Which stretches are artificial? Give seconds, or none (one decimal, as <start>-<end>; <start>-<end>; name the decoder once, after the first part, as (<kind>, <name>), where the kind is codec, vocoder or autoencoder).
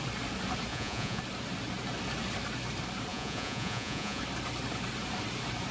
0.7-1.2 (vocoder, Vocos); 3.1-4.2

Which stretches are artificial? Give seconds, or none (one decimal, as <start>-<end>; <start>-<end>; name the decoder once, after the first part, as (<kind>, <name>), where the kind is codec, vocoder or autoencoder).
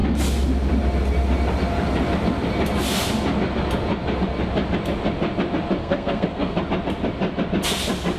5.8-6.6 (codec, SNAC)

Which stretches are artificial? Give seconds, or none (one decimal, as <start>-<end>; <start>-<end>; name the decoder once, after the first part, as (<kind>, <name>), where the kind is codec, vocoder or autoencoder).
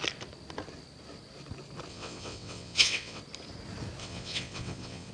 1.9-3.2 (vocoder, WaveNeXt); 4.0-5.1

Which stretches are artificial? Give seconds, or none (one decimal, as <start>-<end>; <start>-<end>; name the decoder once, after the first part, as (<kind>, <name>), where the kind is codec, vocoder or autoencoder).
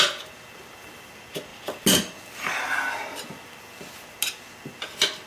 none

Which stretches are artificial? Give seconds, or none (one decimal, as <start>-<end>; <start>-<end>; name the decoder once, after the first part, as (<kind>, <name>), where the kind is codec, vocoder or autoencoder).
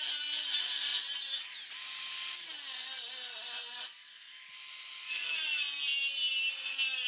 none